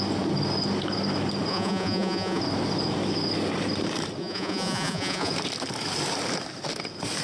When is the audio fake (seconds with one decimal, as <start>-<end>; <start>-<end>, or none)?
1.5-2.4; 4.2-5.3